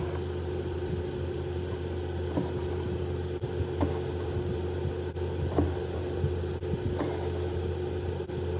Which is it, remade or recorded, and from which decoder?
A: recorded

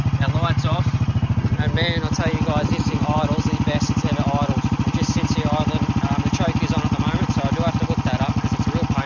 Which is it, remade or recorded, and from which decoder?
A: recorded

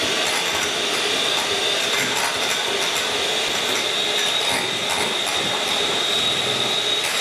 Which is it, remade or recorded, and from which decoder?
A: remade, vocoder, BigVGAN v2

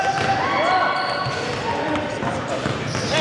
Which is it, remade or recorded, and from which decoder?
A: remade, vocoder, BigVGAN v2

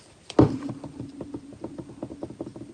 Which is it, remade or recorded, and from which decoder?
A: recorded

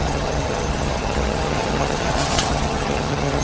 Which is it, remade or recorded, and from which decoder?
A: remade, vocoder, HiFi-GAN